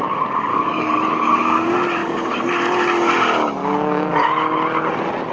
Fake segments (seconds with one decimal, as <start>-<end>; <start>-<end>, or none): 0.5-1.3; 2.0-2.5; 3.6-4.2